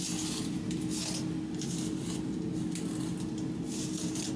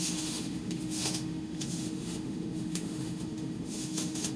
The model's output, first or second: second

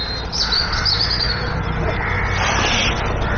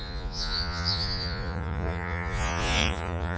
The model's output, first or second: second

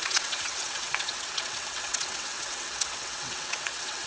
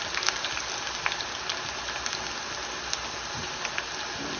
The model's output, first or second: first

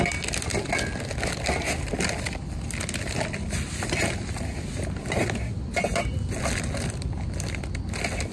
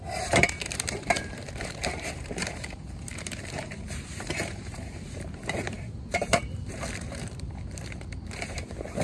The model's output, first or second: second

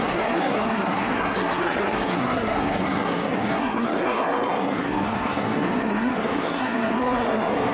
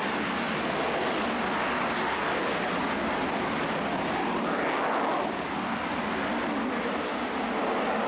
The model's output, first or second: first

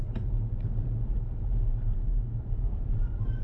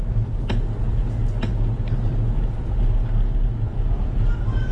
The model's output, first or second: first